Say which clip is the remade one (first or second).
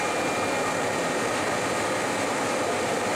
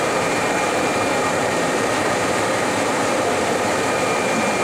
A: second